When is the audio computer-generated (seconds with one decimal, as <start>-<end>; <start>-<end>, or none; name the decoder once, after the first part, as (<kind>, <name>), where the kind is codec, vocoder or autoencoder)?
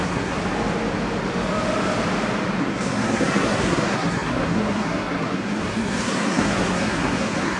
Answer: 0.0-0.4 (codec, SNAC); 2.6-7.6